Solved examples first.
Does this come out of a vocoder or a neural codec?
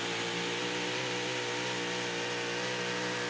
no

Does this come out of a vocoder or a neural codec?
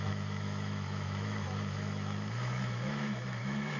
yes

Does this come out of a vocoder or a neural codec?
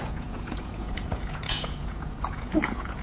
yes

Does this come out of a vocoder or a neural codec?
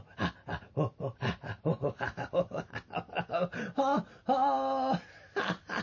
no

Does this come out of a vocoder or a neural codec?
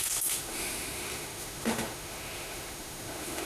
yes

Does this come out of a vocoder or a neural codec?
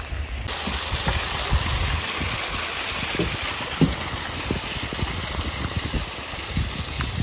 no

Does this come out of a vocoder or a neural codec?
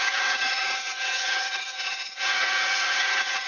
yes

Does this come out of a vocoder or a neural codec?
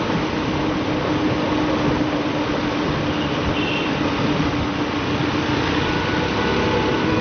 no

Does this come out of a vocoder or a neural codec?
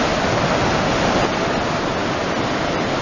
no